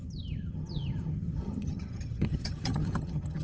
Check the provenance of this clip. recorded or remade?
remade